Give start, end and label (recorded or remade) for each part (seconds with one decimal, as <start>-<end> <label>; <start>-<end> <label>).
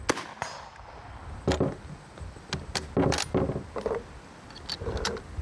0.0-5.4 recorded